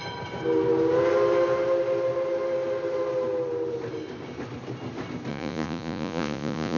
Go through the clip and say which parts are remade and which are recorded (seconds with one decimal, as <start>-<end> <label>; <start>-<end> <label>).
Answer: 0.0-5.3 recorded; 5.3-6.8 remade

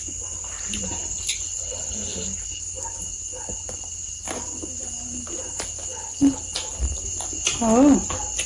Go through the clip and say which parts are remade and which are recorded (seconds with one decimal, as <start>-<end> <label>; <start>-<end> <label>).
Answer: 0.0-1.3 recorded; 1.3-2.6 remade; 2.6-5.9 recorded; 5.9-6.4 remade; 6.4-8.5 recorded

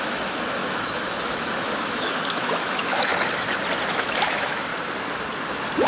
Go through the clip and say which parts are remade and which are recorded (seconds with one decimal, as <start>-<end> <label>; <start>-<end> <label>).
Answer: 0.0-3.1 remade; 3.1-3.9 recorded; 3.9-4.7 remade; 4.7-5.9 recorded

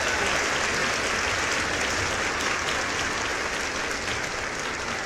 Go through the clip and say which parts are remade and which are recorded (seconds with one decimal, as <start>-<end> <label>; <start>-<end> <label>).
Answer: 0.0-5.1 recorded

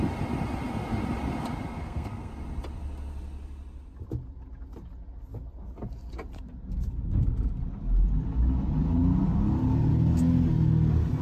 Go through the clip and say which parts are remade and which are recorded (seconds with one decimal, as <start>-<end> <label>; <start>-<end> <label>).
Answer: 0.0-1.8 recorded; 1.8-2.3 remade; 2.3-11.2 recorded

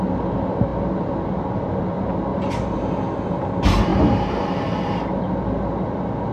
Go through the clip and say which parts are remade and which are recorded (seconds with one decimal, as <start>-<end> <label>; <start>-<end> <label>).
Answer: 0.0-2.3 recorded; 2.3-2.9 remade; 2.9-3.9 recorded; 3.9-4.4 remade; 4.4-6.3 recorded

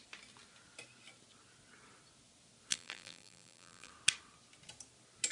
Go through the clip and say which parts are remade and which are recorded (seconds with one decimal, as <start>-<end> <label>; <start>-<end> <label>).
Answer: 0.0-2.7 recorded; 2.7-3.9 remade; 3.9-5.3 recorded